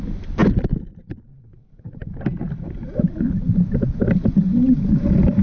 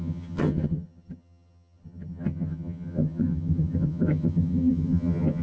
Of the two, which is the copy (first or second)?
second